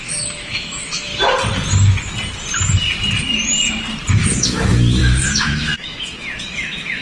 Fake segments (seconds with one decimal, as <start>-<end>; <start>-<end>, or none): 0.0-1.1; 4.1-7.0